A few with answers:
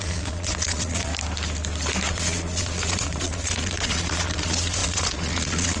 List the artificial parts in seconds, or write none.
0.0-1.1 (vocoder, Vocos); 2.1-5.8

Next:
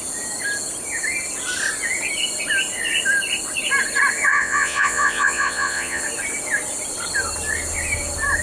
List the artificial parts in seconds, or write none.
4.3-6.0 (vocoder, Vocos)

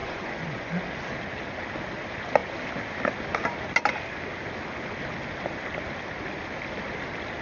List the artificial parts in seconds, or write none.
0.0-0.7 (vocoder, Vocos)

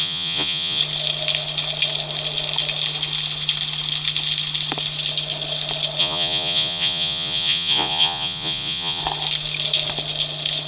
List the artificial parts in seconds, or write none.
0.0-0.8 (vocoder, Vocos); 6.0-9.0

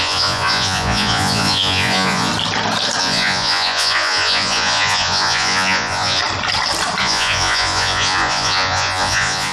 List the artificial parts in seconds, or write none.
0.0-2.3 (vocoder, Vocos); 3.0-6.2; 7.0-9.5